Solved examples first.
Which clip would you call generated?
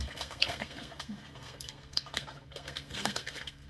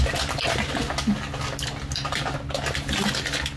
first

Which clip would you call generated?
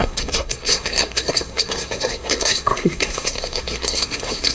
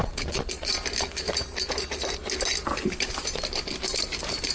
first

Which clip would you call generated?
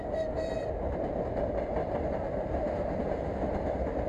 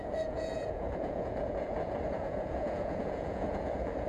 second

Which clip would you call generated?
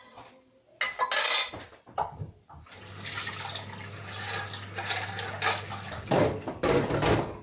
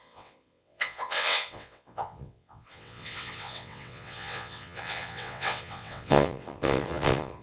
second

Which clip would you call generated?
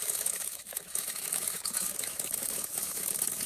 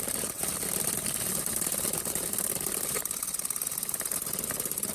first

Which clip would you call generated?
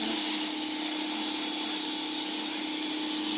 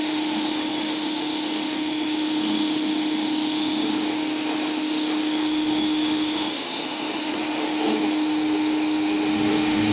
second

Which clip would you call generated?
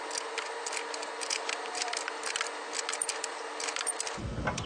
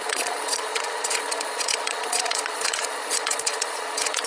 second